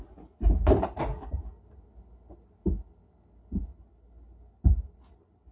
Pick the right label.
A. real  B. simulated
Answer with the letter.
A